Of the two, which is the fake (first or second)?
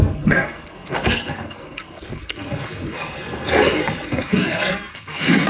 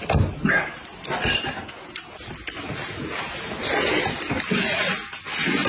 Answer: first